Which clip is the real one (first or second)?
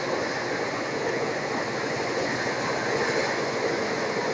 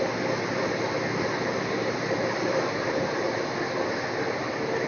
second